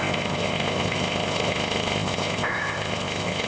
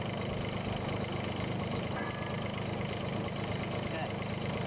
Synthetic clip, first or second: first